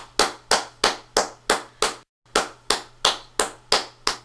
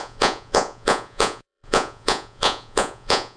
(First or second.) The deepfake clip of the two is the second